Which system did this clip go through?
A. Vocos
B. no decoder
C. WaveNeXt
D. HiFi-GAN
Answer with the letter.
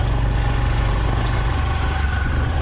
A